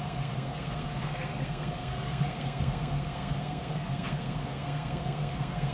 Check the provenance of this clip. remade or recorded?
remade